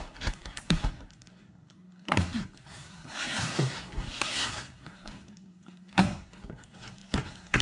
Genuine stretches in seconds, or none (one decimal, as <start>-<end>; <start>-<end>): none